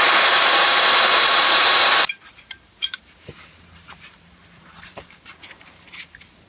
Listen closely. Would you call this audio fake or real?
fake